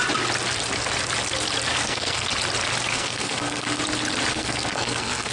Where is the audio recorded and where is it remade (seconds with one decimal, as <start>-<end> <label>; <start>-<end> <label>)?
0.0-1.7 recorded; 1.7-2.3 remade; 2.3-2.9 recorded; 2.9-3.8 remade; 3.8-4.3 recorded; 4.3-5.3 remade